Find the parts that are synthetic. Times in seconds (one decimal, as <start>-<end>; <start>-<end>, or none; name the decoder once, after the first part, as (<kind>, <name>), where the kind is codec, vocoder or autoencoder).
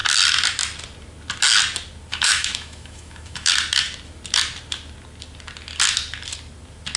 2.1-3.5 (autoencoder, DAC-VAE)